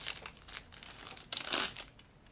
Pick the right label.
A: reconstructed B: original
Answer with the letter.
B